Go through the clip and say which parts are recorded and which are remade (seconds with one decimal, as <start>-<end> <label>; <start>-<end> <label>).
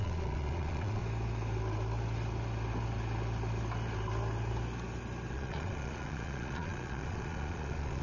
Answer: 0.0-1.0 remade; 1.0-5.3 recorded; 5.3-8.0 remade